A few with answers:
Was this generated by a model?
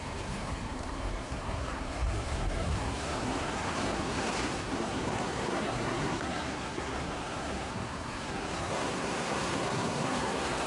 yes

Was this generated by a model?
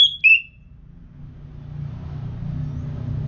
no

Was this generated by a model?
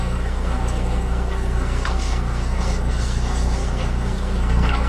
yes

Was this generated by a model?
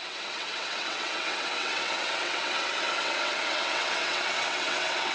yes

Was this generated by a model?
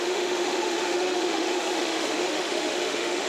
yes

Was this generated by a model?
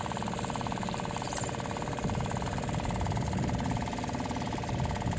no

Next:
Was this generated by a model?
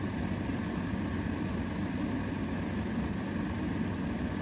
no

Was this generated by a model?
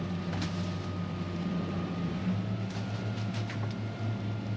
no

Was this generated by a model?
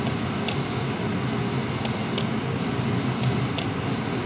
no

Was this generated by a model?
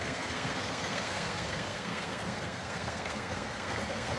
yes